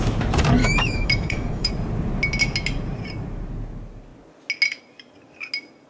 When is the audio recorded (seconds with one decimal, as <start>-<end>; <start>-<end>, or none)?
0.0-0.6; 1.7-5.9